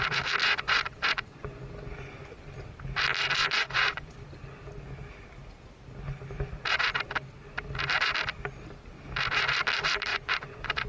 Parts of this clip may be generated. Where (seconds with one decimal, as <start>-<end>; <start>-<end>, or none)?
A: 0.4-1.6; 3.4-4.1; 10.1-10.9